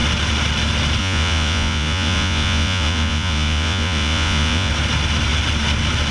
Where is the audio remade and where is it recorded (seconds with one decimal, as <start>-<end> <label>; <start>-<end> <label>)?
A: 0.0-1.0 recorded; 1.0-4.7 remade; 4.7-6.1 recorded